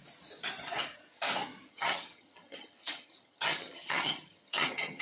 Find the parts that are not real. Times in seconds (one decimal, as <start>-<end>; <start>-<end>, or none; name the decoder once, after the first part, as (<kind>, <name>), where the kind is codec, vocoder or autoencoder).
1.7-5.0 (vocoder, HiFi-GAN)

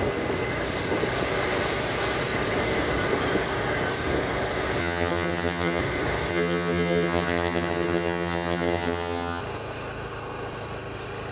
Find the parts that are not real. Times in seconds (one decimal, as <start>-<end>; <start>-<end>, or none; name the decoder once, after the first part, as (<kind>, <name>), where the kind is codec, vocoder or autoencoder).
4.8-5.8 (vocoder, HiFi-GAN); 6.3-9.4

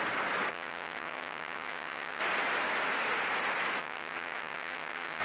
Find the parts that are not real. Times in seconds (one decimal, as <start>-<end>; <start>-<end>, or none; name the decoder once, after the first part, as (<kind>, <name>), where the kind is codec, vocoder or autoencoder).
0.5-2.2 (vocoder, HiFi-GAN); 3.8-5.2

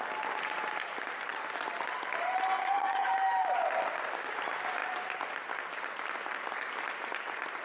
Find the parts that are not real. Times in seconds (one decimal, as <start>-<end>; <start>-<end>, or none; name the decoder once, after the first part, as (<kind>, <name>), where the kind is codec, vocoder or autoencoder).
2.6-3.1 (vocoder, HiFi-GAN)

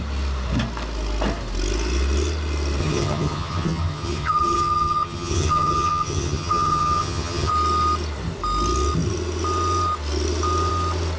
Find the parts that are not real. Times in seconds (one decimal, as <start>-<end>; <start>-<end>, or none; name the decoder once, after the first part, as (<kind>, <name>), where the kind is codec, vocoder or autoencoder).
2.8-7.5 (vocoder, HiFi-GAN)

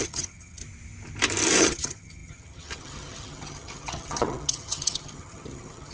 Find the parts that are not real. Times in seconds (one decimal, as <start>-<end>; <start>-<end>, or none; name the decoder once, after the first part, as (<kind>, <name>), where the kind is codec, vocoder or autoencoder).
0.0-0.6 (vocoder, HiFi-GAN); 1.6-5.9

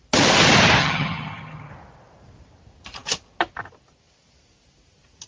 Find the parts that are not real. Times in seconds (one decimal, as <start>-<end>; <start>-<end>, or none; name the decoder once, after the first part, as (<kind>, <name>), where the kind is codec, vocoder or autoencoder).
0.8-1.7 (vocoder, HiFi-GAN)